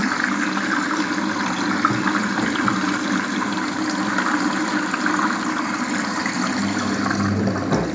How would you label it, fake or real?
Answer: real